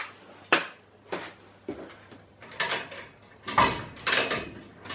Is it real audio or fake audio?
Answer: real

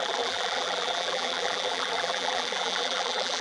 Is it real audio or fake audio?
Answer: fake